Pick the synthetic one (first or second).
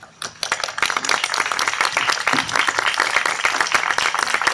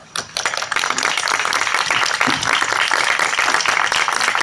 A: second